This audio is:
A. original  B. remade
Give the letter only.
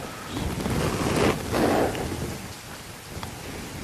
A